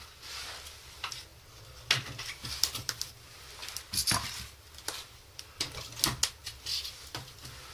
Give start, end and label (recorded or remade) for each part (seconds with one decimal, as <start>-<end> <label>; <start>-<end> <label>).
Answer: 0.0-7.7 recorded